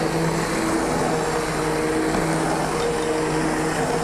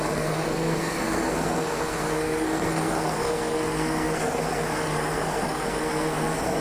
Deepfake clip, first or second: second